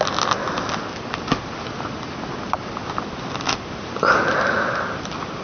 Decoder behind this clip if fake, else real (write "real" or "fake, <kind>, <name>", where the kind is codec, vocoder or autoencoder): real